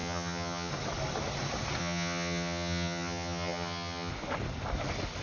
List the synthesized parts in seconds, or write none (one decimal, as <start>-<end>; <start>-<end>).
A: 0.0-0.7; 1.8-4.1